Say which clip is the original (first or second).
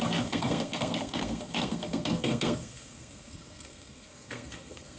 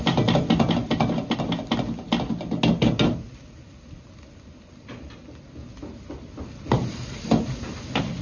second